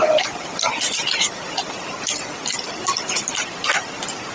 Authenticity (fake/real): real